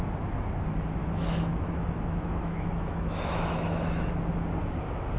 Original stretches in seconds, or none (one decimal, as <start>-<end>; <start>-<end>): 0.0-1.0; 4.1-5.2